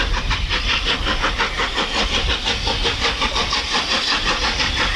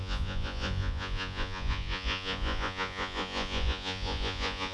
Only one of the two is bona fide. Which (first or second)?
first